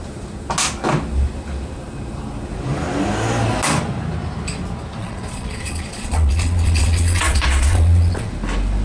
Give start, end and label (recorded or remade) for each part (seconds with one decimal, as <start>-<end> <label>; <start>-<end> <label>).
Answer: 0.0-5.0 recorded; 5.0-8.3 remade; 8.3-8.8 recorded